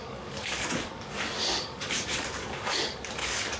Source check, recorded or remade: remade